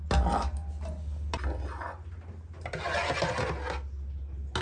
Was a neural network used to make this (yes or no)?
no